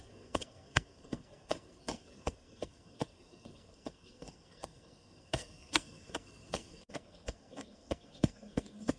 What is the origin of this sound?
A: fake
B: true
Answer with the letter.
A